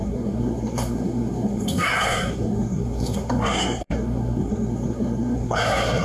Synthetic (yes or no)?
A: yes